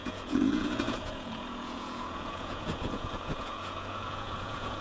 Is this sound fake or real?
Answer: fake